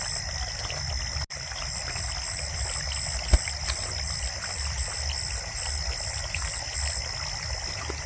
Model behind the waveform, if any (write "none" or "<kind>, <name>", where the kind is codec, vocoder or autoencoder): none